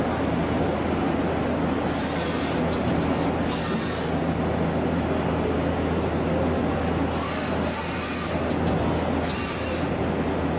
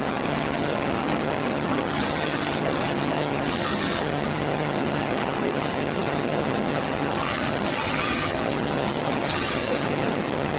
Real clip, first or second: first